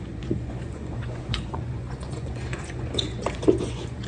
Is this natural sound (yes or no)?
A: no